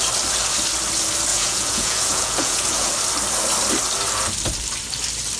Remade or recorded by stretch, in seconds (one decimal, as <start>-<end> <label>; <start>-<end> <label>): 0.0-1.3 recorded; 1.3-2.9 remade; 2.9-5.4 recorded